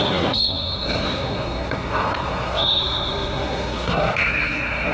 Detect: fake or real fake